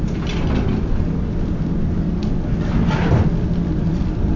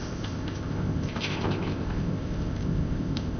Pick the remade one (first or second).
second